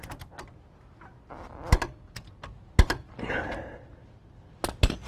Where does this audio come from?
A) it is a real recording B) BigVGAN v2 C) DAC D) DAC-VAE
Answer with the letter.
A